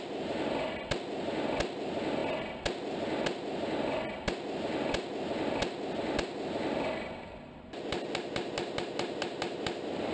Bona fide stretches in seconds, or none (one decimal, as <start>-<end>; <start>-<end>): 0.0-10.1